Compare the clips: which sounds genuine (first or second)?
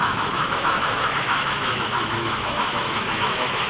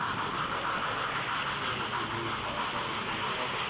second